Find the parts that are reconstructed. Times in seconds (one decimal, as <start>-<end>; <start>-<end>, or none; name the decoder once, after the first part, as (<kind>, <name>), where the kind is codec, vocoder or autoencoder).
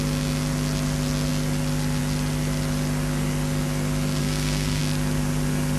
4.2-4.8 (codec, SNAC)